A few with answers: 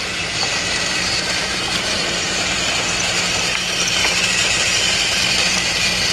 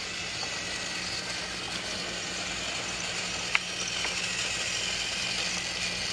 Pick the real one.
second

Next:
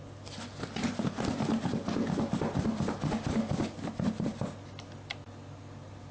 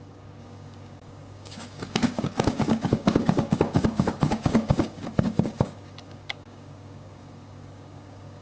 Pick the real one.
first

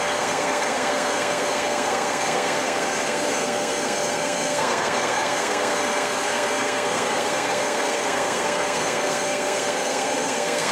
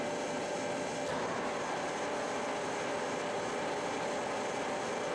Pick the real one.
second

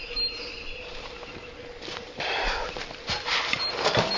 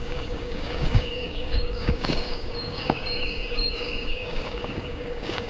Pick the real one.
first